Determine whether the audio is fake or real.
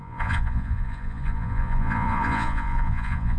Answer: fake